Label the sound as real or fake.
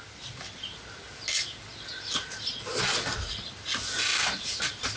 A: real